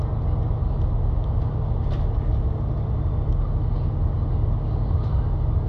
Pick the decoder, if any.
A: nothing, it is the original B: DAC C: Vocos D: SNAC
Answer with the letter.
A